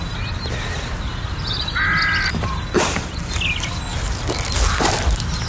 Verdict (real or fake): real